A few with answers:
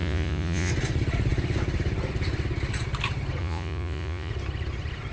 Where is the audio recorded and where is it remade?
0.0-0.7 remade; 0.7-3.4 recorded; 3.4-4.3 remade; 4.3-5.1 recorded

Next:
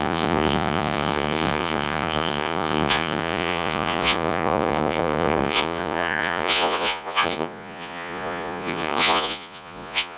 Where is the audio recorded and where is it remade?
0.0-10.2 remade